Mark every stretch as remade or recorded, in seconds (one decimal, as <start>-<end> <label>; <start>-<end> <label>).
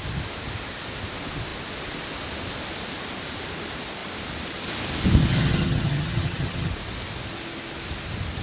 0.0-5.3 recorded; 5.3-6.7 remade; 6.7-8.4 recorded